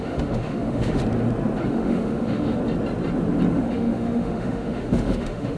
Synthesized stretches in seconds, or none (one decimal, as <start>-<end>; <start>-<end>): 0.0-1.0; 1.7-2.6; 3.5-5.6